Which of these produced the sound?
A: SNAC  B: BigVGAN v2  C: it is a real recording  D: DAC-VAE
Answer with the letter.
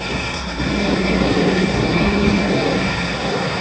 A